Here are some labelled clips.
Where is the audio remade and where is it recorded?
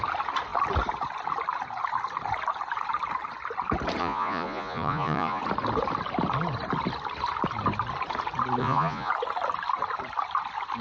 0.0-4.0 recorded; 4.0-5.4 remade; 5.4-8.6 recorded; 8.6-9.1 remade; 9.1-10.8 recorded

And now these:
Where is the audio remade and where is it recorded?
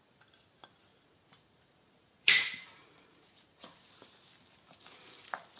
0.0-0.9 recorded; 0.9-3.9 remade; 3.9-5.6 recorded